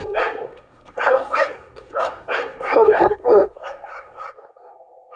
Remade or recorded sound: remade